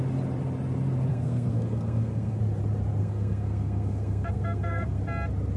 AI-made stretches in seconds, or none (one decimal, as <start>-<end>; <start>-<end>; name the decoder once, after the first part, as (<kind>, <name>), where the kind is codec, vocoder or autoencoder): 1.1-2.4 (codec, SNAC); 3.0-5.0